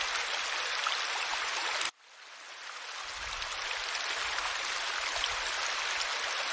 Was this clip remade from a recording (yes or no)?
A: no